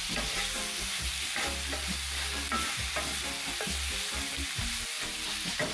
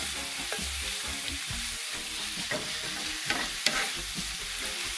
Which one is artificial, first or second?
second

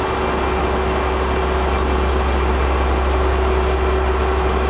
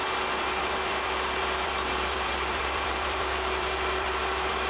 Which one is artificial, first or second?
second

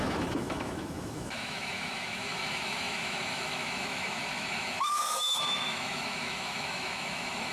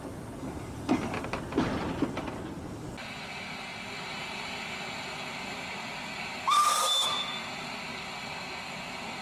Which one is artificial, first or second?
first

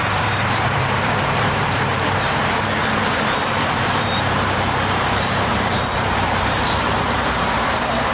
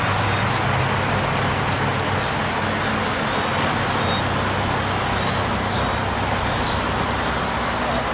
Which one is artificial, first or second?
first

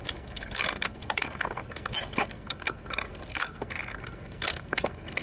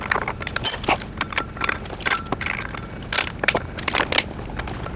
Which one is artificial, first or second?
first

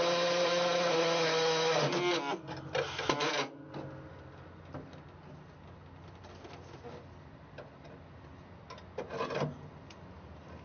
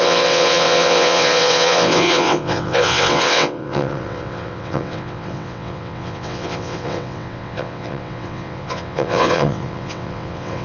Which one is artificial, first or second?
second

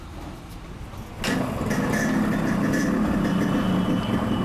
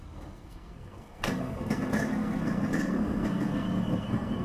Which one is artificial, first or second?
second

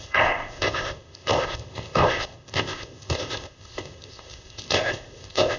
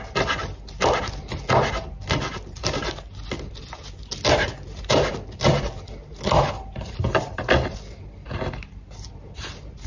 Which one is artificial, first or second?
first